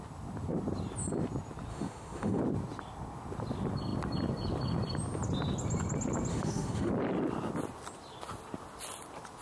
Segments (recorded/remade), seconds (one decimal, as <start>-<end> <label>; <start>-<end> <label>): 0.0-1.7 recorded; 1.7-2.4 remade; 2.4-6.3 recorded; 6.3-6.9 remade; 6.9-9.4 recorded